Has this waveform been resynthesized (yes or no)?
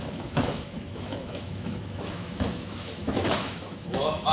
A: yes